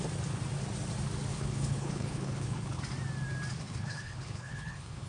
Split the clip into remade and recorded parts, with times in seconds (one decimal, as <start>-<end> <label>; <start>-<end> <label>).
0.0-1.3 recorded; 1.3-2.8 remade; 2.8-3.6 recorded; 3.6-5.1 remade